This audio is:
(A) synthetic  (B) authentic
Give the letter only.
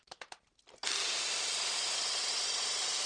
B